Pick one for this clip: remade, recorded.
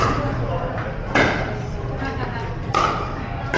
recorded